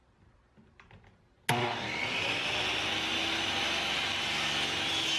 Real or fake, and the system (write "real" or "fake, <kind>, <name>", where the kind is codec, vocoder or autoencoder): real